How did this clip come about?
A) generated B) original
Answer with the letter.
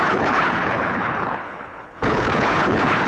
A